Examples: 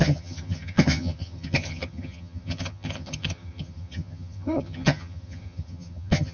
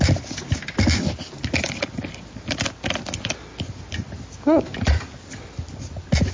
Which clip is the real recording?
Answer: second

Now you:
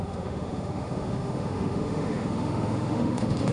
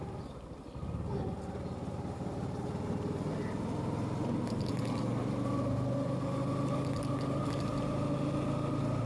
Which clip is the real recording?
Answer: second